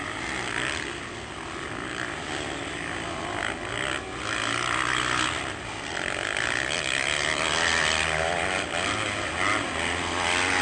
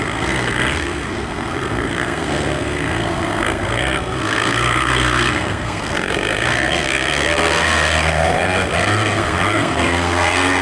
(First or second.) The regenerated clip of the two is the second